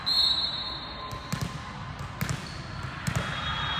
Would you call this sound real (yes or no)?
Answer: yes